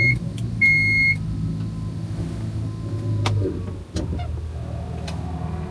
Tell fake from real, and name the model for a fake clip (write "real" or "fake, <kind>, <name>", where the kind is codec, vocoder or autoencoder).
real